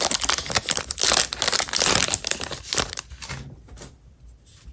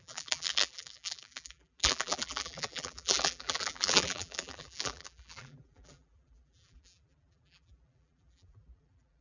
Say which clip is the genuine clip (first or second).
first